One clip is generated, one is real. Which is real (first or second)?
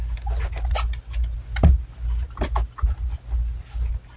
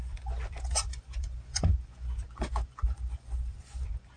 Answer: first